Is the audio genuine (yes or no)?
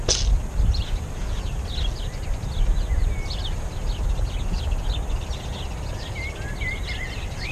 yes